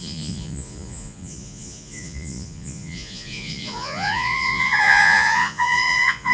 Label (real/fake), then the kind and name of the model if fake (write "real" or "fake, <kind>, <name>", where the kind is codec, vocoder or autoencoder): fake, vocoder, Vocos